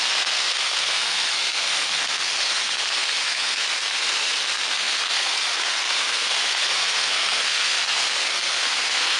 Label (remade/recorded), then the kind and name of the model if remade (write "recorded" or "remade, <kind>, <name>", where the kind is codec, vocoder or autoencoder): remade, codec, SNAC